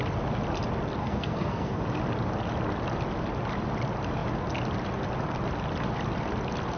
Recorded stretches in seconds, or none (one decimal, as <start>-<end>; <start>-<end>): 0.0-1.0; 1.8-6.8